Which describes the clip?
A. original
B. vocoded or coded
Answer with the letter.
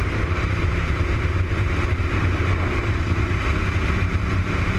B